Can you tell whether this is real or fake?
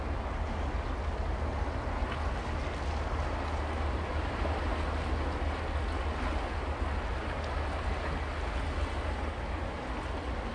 real